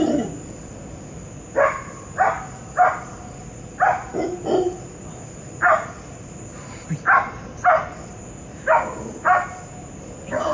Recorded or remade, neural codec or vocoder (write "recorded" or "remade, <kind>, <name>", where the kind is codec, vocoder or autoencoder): remade, vocoder, BigVGAN v2